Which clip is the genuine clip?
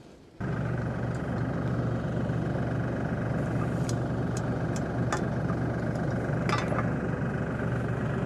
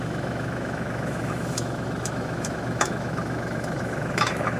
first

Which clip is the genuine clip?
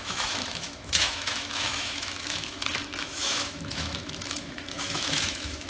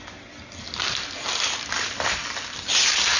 second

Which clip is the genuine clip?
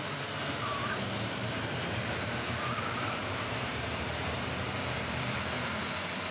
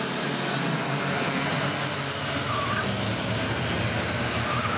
second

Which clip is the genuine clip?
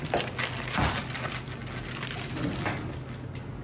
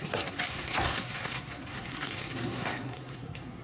first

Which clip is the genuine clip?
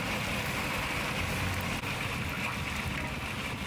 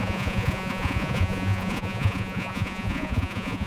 first